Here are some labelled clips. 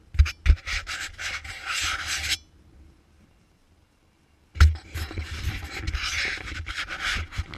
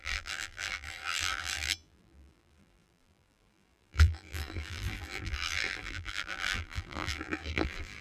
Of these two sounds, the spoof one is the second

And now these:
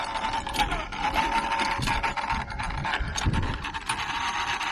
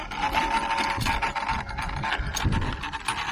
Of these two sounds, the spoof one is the first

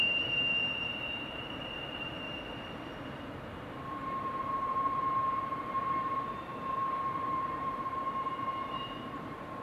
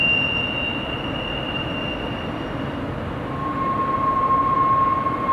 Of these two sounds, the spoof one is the first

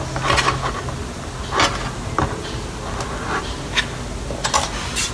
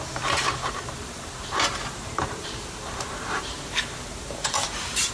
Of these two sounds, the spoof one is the second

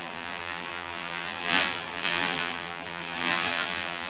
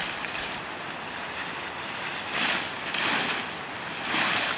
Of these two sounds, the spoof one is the first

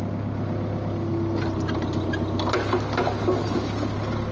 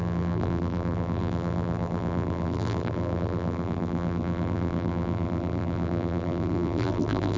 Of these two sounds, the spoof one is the second